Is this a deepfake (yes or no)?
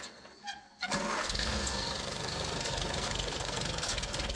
yes